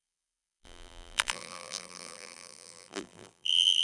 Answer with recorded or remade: remade